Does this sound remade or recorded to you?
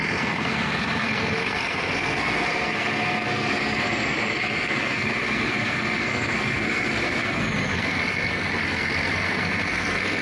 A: remade